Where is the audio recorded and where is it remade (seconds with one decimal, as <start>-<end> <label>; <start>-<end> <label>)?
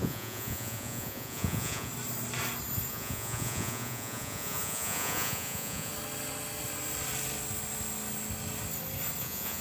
0.0-1.9 remade; 1.9-2.9 recorded; 2.9-5.9 remade; 5.9-9.2 recorded; 9.2-9.6 remade